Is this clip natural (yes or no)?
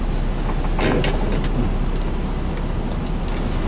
yes